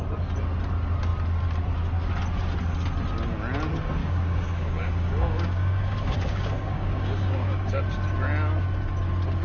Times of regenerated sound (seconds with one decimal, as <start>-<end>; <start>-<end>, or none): 4.0-7.8